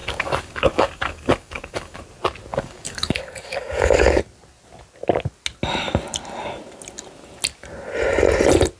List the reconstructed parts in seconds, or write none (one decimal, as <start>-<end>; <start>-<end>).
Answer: 0.0-2.0; 2.5-4.2